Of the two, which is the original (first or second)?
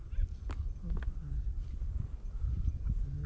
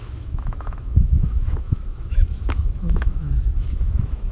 first